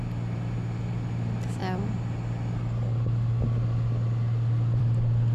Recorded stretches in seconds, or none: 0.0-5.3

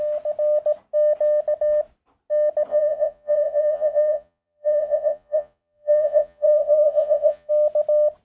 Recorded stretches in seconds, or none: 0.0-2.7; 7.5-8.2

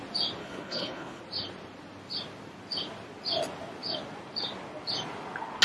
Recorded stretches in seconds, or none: 0.0-0.4; 1.2-5.6

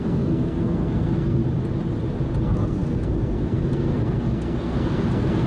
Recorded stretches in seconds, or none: 1.4-2.4

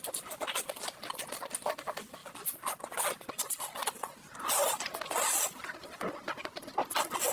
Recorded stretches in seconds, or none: 0.0-7.3

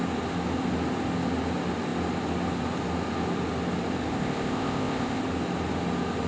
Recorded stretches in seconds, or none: 0.0-4.1; 5.2-6.3

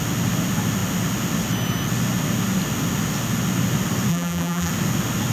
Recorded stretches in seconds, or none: 0.0-4.1; 4.7-5.3

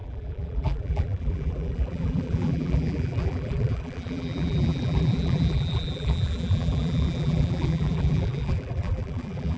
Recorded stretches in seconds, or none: none